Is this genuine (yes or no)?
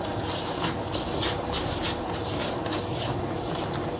yes